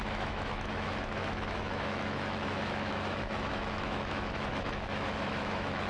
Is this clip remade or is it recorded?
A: remade